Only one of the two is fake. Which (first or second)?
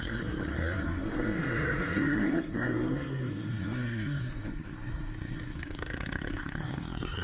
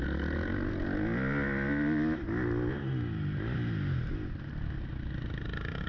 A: first